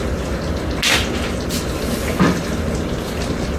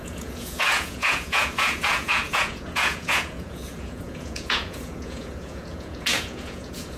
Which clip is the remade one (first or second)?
second